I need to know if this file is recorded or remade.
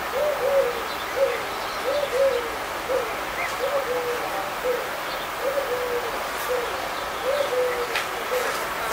recorded